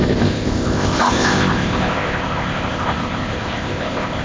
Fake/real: fake